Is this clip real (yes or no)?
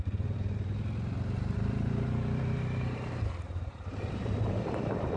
no